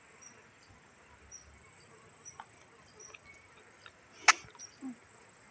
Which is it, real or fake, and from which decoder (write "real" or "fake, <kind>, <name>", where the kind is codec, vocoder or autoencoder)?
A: real